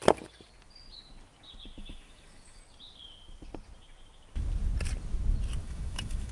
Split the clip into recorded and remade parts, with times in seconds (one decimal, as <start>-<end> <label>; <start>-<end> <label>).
0.0-1.8 recorded; 1.8-2.6 remade; 2.6-5.6 recorded; 5.6-6.3 remade